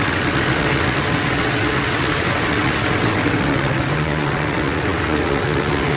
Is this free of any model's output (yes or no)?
no